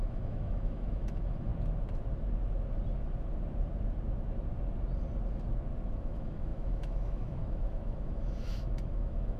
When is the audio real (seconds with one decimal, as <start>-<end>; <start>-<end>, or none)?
1.5-6.0